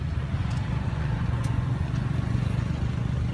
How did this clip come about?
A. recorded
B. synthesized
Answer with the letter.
B